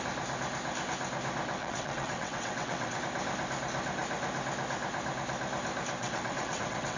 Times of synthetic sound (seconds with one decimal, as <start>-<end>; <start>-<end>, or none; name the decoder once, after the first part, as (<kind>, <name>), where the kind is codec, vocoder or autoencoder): 1.6-3.0 (vocoder, WaveNeXt); 6.0-7.0